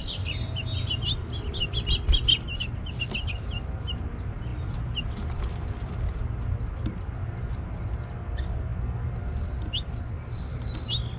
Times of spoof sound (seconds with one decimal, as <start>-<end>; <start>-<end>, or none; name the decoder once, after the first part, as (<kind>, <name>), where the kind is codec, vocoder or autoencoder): none